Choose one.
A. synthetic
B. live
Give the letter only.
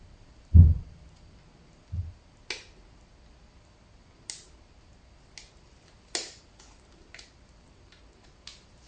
B